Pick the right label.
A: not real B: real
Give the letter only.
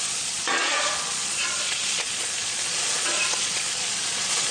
A